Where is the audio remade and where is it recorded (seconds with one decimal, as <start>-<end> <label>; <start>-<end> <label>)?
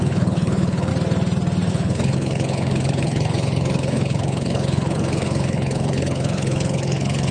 0.0-0.9 remade; 0.9-1.7 recorded; 1.7-7.3 remade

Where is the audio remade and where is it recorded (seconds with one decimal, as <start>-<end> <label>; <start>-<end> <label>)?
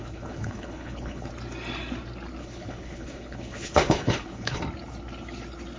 0.0-1.3 remade; 1.3-2.4 recorded; 2.4-4.6 remade; 4.6-5.8 recorded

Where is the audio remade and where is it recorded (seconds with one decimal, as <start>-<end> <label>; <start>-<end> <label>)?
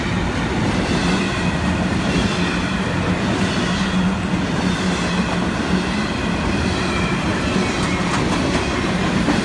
0.0-9.4 recorded